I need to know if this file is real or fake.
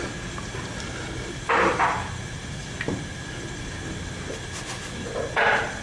real